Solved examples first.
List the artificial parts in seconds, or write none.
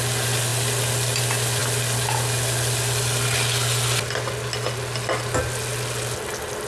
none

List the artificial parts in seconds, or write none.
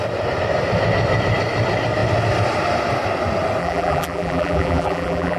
3.6-5.4 (vocoder, BigVGAN v2)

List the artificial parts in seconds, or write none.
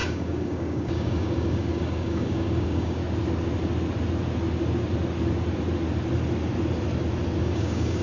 0.0-3.0 (codec, DAC); 7.4-8.0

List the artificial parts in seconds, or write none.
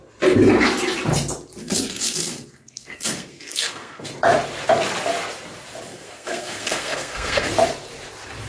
1.6-4.1 (codec, SNAC); 5.9-7.5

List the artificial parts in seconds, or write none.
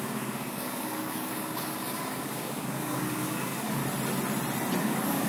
0.0-3.8 (codec, DAC); 4.8-5.3